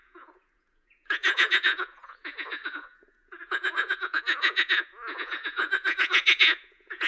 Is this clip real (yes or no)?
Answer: no